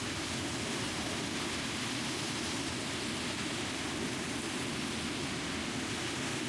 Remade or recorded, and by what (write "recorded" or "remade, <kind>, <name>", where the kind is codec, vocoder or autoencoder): recorded